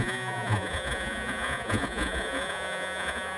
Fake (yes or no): yes